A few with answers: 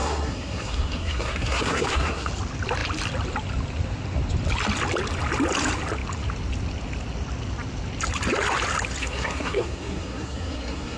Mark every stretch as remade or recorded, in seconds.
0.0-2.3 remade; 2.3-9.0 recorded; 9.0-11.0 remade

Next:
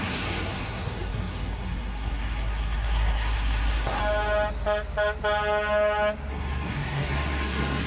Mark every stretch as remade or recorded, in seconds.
0.0-4.0 remade; 4.0-6.3 recorded; 6.3-7.9 remade

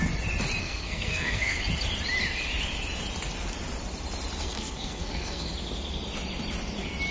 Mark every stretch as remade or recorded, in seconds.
0.0-0.6 recorded; 0.6-1.6 remade; 1.6-4.4 recorded; 4.4-5.5 remade; 5.5-7.1 recorded

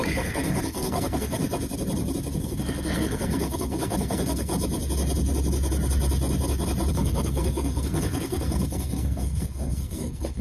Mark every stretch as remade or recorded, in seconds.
0.0-1.4 remade; 1.4-2.4 recorded; 2.4-4.5 remade; 4.5-6.9 recorded; 6.9-10.4 remade

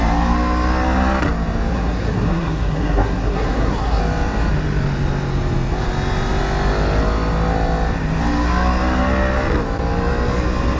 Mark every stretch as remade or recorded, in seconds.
0.0-1.7 recorded; 1.7-4.0 remade; 4.0-10.8 recorded

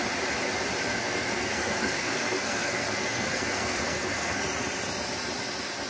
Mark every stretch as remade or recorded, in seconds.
0.0-0.9 recorded; 0.9-4.4 remade; 4.4-5.9 recorded

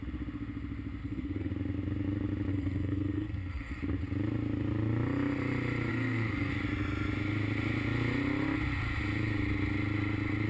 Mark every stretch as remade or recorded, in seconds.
0.0-1.0 recorded; 1.0-1.5 remade; 1.5-2.5 recorded; 2.5-3.7 remade; 3.7-5.9 recorded; 5.9-6.5 remade; 6.5-10.5 recorded

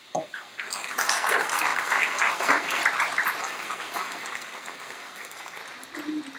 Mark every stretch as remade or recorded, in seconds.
0.0-2.8 remade; 2.8-3.4 recorded; 3.4-5.6 remade; 5.6-6.4 recorded